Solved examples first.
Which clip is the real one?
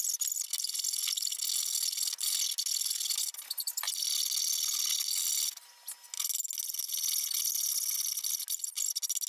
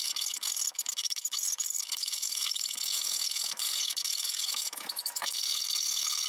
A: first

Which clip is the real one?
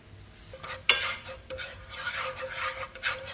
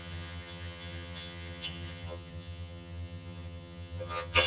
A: first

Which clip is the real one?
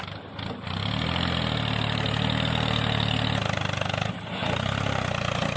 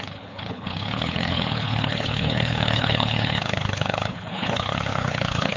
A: first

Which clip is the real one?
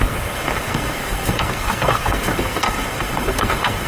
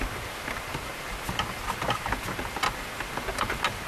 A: second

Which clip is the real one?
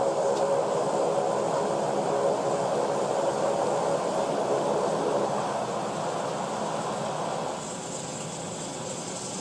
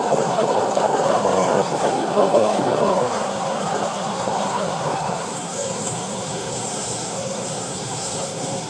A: first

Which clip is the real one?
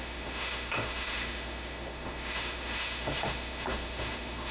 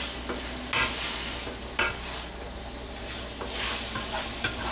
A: second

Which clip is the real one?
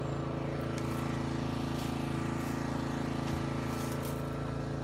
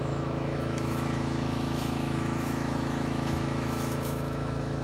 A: first